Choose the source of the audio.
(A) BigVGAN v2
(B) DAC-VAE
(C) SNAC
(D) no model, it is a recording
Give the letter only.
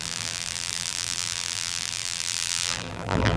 A